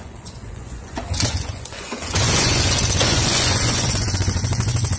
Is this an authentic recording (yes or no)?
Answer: no